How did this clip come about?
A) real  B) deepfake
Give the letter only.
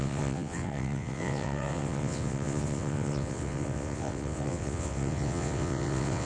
B